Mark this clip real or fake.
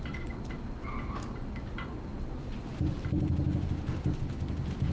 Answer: real